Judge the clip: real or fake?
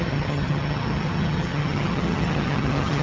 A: fake